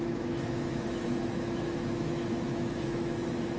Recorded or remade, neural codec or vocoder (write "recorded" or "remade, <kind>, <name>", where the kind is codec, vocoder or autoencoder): remade, autoencoder, DAC-VAE